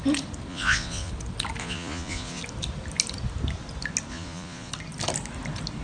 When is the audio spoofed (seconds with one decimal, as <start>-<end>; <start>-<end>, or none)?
0.5-1.1; 1.6-2.4; 4.1-4.7